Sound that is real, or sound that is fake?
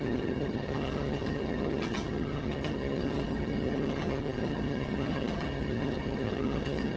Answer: fake